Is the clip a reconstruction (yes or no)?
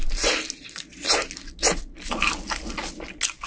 no